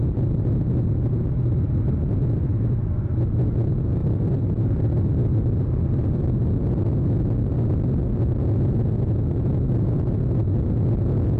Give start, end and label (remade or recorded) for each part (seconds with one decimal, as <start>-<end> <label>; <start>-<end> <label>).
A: 0.0-4.0 recorded; 4.0-6.2 remade; 6.2-11.4 recorded